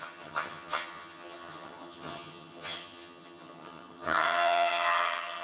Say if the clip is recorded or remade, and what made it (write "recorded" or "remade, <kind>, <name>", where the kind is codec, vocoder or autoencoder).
remade, vocoder, HiFi-GAN